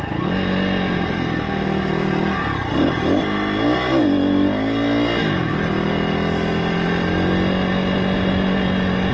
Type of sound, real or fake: real